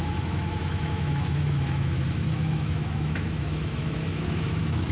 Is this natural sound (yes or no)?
no